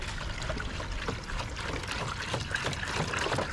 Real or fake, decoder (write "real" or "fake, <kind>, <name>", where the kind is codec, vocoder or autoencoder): real